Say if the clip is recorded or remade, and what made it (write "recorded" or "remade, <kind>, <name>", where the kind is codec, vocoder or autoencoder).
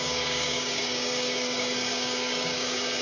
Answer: remade, codec, DAC